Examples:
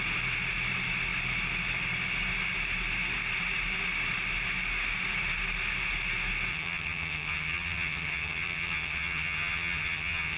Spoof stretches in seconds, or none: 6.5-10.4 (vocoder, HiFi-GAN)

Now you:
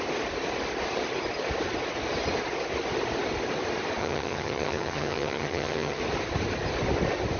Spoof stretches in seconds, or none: 4.0-6.0 (vocoder, HiFi-GAN)